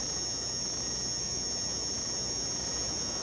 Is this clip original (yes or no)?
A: no